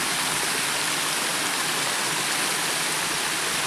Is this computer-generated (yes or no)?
no